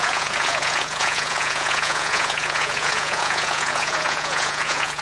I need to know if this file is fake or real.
fake